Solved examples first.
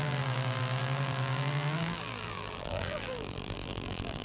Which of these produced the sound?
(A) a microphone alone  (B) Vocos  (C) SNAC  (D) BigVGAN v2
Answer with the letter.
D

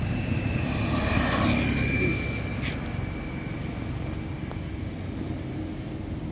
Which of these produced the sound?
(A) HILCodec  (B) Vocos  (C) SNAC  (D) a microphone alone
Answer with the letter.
D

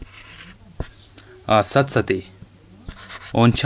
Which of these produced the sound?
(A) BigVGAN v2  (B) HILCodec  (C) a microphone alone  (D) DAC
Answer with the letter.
A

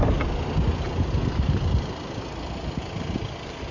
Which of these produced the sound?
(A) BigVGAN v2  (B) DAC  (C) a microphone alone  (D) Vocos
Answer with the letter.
C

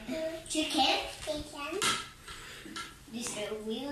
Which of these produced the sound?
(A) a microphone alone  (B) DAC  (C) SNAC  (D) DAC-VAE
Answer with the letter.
A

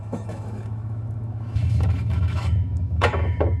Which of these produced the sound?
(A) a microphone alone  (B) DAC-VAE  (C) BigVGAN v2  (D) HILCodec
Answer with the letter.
B